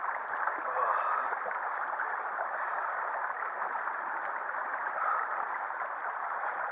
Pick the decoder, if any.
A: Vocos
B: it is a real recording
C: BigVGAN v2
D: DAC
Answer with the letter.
B